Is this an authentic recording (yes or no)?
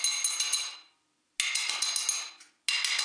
yes